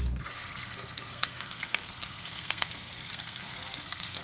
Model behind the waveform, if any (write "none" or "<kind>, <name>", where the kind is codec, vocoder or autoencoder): codec, SNAC